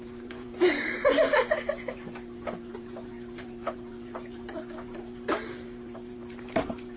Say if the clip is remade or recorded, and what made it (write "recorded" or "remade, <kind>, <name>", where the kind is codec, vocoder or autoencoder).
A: remade, vocoder, BigVGAN v2